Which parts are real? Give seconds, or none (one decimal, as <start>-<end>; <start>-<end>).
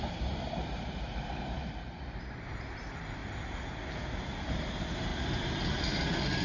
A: 3.2-4.2; 5.1-6.4